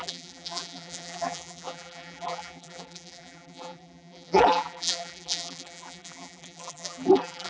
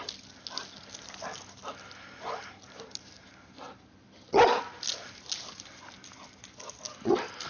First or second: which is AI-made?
first